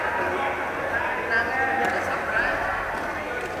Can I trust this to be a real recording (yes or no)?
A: yes